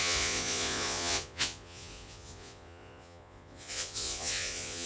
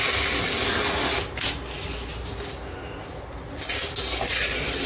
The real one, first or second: second